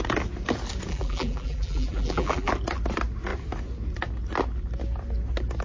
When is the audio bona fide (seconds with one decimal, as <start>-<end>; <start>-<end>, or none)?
0.0-0.9; 2.5-5.6

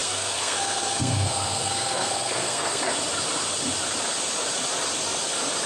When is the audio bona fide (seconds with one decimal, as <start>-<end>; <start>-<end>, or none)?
2.8-5.7

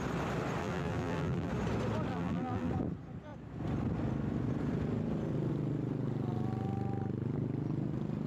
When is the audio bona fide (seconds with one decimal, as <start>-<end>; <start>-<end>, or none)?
0.0-0.6; 1.5-2.1; 2.7-8.3

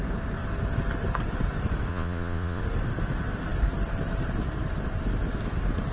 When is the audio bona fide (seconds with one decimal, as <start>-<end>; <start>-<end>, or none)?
0.0-1.9; 2.6-5.9